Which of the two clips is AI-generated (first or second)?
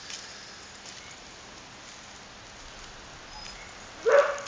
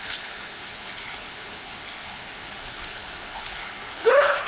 second